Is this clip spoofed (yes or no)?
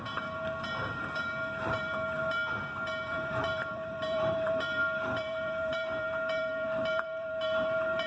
yes